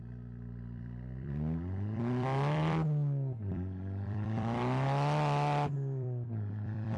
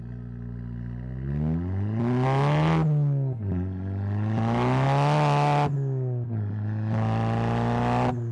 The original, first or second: second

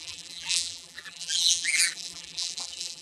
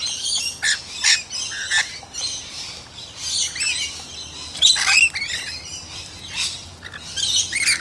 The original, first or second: second